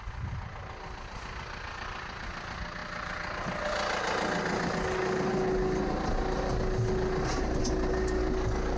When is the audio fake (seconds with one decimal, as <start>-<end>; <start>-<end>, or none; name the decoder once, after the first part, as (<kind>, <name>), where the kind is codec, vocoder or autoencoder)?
8.2-8.8 (codec, DAC)